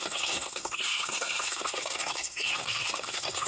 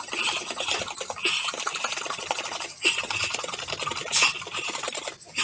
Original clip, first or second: second